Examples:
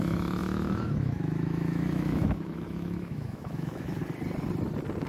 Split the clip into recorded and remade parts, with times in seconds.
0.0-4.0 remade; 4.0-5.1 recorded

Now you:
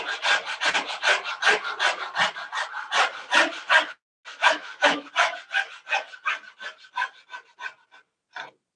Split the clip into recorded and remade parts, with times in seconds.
0.0-4.3 recorded; 4.3-5.1 remade; 5.1-8.8 recorded

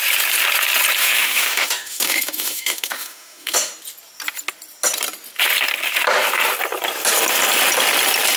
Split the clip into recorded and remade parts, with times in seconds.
0.0-1.0 recorded; 1.0-3.7 remade; 3.7-8.4 recorded

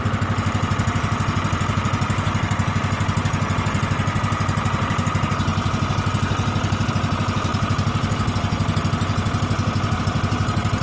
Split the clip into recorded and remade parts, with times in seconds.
0.0-10.8 recorded